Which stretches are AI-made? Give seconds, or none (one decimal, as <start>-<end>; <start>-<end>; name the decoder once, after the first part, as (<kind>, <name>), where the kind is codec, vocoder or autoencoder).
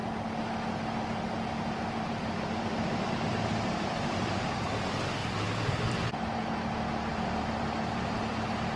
2.1-5.2 (vocoder, BigVGAN v2); 7.1-8.8